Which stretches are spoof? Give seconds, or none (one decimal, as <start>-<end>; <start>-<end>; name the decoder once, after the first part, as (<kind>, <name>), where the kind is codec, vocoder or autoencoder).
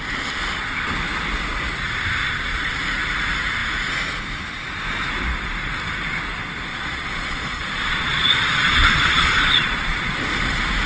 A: 2.2-2.8 (vocoder, Vocos); 6.7-10.1